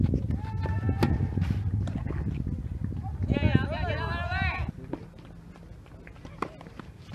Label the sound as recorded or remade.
recorded